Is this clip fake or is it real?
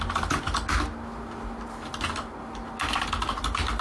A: real